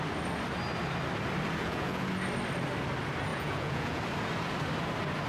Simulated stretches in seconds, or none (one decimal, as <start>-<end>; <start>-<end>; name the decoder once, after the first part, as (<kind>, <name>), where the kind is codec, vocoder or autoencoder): 1.6-2.1 (vocoder, Vocos); 3.3-4.0